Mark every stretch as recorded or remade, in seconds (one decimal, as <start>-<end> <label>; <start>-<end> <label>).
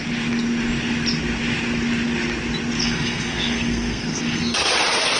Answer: 0.0-2.8 recorded; 2.8-4.7 remade; 4.7-5.2 recorded